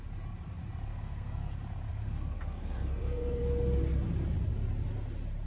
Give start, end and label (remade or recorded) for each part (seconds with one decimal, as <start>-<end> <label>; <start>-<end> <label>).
0.0-0.9 recorded; 0.9-1.5 remade; 1.5-1.9 recorded; 1.9-3.4 remade; 3.4-5.5 recorded